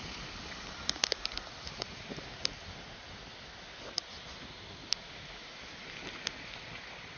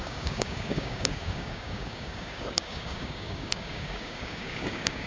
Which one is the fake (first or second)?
second